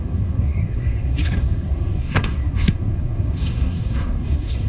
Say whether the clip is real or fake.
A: fake